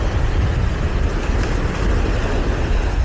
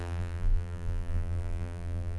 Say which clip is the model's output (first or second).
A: second